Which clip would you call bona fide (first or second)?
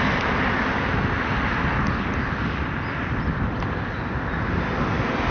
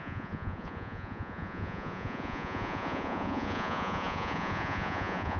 first